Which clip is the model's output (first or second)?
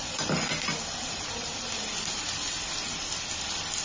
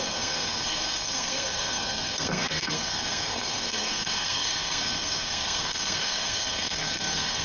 second